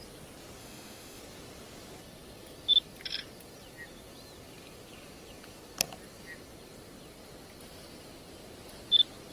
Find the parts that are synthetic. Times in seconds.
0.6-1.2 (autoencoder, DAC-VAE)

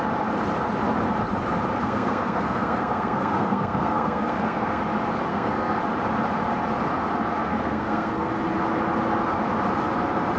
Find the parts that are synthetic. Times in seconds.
1.8-4.8 (codec, SNAC); 5.3-5.8; 7.4-8.3

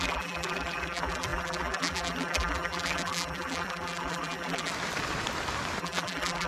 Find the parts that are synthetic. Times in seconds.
0.0-4.7 (vocoder, BigVGAN v2); 5.8-6.5

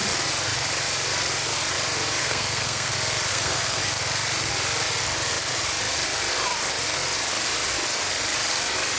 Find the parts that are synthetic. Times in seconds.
2.2-2.9 (codec, SNAC); 3.3-3.8

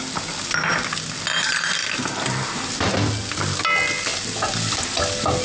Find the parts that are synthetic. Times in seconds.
1.8-2.9 (vocoder, BigVGAN v2)

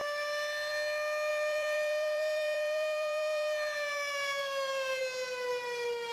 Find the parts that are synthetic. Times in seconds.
1.3-5.0 (vocoder, BigVGAN v2)